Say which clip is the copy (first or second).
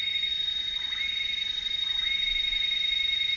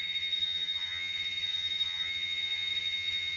second